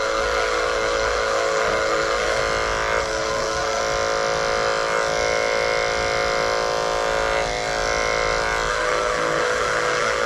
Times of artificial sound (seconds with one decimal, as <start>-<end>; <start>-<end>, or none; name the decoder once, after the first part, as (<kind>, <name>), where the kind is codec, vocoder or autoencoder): 0.0-2.4 (codec, SNAC); 3.0-3.8; 8.7-10.3